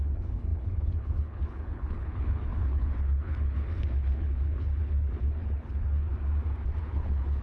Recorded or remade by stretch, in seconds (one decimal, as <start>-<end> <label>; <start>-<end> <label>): 0.0-6.1 remade; 6.1-6.8 recorded; 6.8-7.4 remade